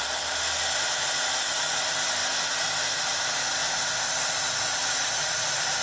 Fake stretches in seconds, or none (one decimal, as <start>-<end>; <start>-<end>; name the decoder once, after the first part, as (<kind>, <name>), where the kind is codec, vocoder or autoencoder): none